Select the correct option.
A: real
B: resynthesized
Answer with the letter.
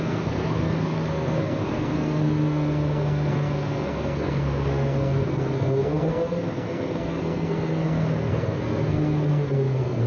B